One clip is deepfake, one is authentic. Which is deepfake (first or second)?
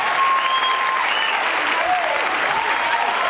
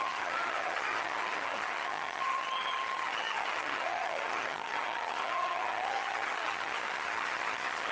second